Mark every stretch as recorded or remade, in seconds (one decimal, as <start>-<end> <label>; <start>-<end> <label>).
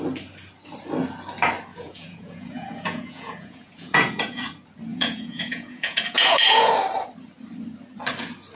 0.0-1.7 recorded; 1.7-4.4 remade; 4.4-4.9 recorded; 4.9-6.7 remade; 6.7-8.5 recorded